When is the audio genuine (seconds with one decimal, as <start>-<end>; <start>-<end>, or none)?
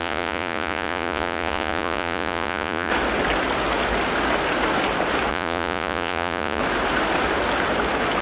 2.9-5.3; 6.6-8.2